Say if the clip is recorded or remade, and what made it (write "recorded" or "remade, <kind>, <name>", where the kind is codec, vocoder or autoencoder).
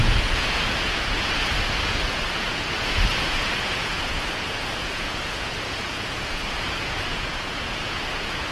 remade, vocoder, Vocos